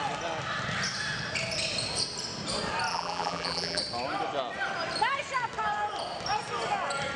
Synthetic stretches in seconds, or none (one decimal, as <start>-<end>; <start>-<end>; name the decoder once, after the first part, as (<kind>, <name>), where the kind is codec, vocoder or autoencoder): 2.9-3.8 (vocoder, BigVGAN v2)